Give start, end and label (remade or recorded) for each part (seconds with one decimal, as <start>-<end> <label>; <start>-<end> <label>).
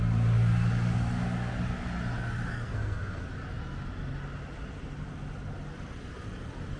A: 0.0-2.5 recorded; 2.5-3.2 remade; 3.2-6.8 recorded